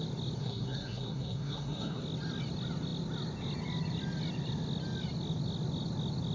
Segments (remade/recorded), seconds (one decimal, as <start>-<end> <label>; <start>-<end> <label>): 0.0-0.4 recorded; 0.4-2.0 remade; 2.0-6.3 recorded